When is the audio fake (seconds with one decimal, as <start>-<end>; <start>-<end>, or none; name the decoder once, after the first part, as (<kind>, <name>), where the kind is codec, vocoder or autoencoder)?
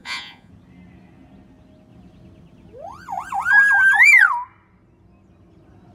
0.0-0.5 (vocoder, Vocos)